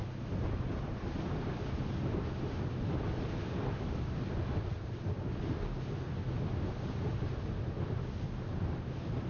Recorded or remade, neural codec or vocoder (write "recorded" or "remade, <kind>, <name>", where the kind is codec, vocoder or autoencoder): recorded